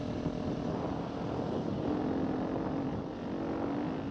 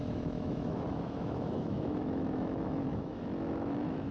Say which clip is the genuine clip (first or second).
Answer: first